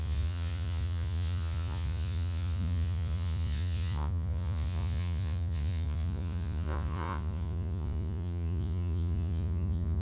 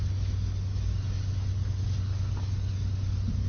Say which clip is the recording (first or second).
second